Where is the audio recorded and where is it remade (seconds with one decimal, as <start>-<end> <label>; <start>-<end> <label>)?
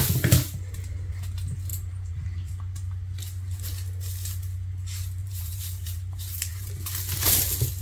0.0-1.7 recorded; 1.7-2.5 remade; 2.5-5.2 recorded; 5.2-6.7 remade; 6.7-7.8 recorded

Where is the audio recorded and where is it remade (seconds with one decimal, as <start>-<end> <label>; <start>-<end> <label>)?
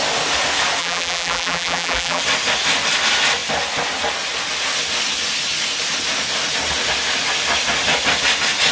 0.0-0.8 recorded; 0.8-2.2 remade; 2.2-8.7 recorded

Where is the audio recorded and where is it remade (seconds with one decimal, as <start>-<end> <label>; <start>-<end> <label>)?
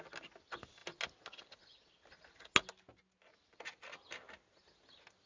0.0-5.3 recorded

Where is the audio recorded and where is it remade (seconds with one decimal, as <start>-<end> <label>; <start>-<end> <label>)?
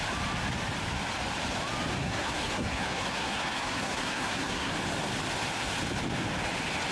0.0-2.0 recorded; 2.0-4.7 remade; 4.7-6.9 recorded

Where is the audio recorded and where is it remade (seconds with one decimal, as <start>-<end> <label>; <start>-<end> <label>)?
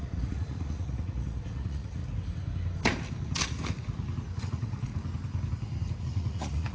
0.0-2.0 remade; 2.0-4.4 recorded; 4.4-4.9 remade; 4.9-6.0 recorded; 6.0-6.7 remade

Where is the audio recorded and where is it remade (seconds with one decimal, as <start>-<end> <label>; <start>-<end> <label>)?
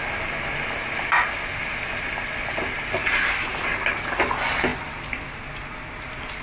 0.0-6.4 recorded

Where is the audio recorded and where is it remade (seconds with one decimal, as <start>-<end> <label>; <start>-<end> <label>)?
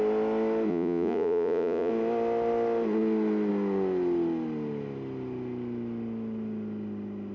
0.0-0.7 recorded; 0.7-1.9 remade; 1.9-7.3 recorded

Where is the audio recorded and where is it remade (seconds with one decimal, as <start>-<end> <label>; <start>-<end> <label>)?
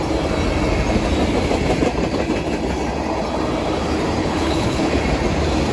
0.0-4.2 recorded; 4.2-5.0 remade; 5.0-5.7 recorded